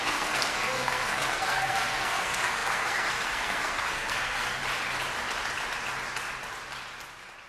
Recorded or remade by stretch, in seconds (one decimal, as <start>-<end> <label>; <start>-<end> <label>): 0.0-4.6 remade; 4.6-7.5 recorded